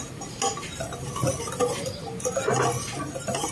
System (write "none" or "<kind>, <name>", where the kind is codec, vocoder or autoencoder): none